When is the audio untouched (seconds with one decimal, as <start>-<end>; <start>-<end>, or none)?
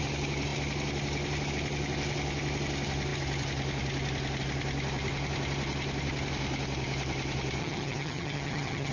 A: 0.0-7.6